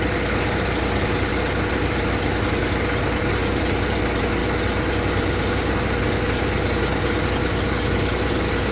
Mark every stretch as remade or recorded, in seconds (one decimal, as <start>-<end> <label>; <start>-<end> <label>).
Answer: 0.0-8.7 recorded